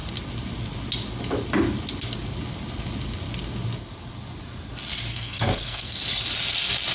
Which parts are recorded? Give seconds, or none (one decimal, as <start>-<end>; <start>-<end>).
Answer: 0.0-5.1; 6.0-6.9